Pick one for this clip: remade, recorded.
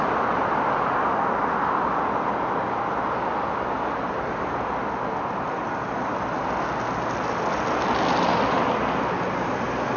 recorded